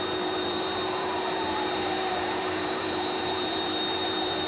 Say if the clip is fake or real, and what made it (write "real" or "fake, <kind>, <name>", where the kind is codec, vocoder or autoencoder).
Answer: fake, vocoder, BigVGAN v2